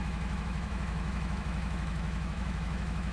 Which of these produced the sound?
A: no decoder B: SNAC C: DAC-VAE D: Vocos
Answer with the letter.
C